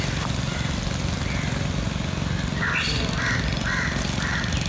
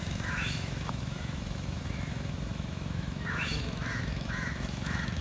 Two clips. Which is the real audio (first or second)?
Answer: first